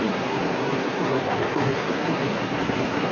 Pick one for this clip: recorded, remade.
remade